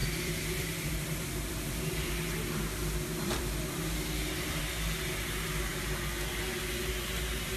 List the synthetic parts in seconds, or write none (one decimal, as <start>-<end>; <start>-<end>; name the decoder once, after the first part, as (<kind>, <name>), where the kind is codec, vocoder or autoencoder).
0.0-4.6 (vocoder, BigVGAN v2)